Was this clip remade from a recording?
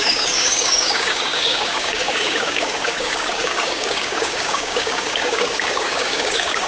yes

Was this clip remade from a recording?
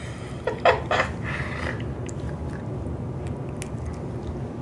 no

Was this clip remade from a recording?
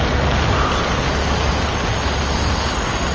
no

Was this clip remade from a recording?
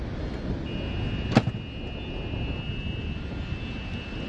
no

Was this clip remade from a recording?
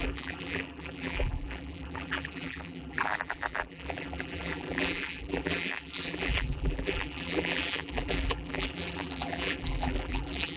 yes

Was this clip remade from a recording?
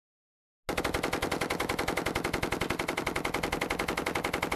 no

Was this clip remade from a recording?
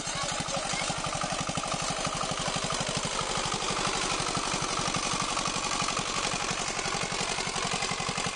no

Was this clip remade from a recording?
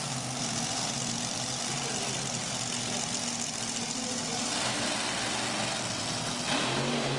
no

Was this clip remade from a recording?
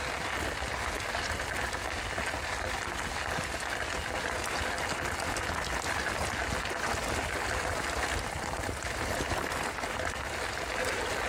no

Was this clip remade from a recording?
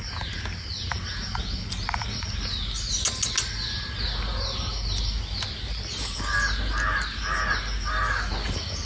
no